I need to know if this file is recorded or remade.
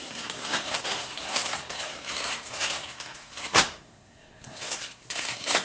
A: remade